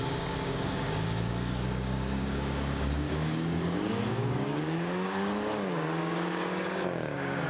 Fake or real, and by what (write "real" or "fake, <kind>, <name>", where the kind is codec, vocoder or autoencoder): fake, codec, DAC